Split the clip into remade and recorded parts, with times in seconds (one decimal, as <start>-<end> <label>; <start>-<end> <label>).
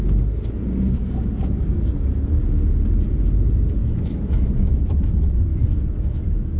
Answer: 0.0-3.8 recorded; 3.8-4.8 remade; 4.8-5.5 recorded; 5.5-6.6 remade